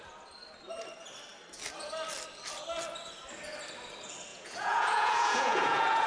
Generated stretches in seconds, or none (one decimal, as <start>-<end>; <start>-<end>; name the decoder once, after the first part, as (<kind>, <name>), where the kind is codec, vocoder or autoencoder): 4.3-6.1 (vocoder, Vocos)